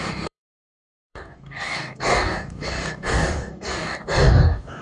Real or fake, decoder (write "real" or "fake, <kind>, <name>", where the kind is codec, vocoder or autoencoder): fake, codec, DAC